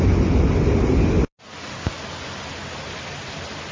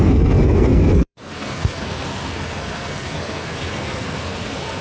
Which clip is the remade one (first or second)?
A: second